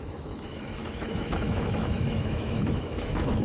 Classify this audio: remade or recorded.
remade